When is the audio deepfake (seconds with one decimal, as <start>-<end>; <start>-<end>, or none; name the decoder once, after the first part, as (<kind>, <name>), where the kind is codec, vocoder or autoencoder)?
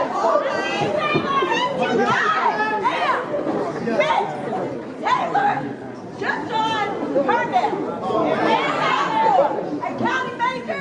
1.7-2.7 (vocoder, BigVGAN v2)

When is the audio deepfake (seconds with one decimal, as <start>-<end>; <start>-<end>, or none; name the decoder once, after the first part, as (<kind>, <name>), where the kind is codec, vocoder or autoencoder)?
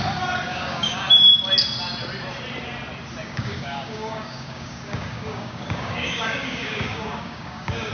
0.5-1.0 (codec, DAC); 3.2-7.9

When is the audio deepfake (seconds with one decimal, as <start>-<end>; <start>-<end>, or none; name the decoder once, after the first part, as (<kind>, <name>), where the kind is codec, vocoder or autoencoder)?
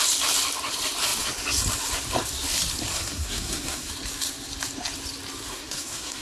2.9-3.9 (codec, SNAC); 5.5-6.2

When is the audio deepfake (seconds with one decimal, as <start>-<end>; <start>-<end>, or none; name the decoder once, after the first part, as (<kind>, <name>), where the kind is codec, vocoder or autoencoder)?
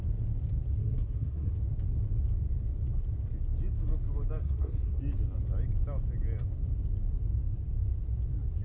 0.8-1.5 (codec, SNAC); 4.4-5.0